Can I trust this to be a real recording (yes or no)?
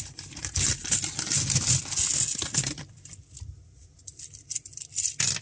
yes